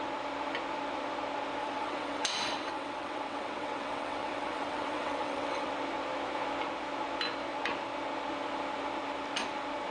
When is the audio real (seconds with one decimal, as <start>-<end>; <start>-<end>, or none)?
0.0-1.6; 5.7-9.9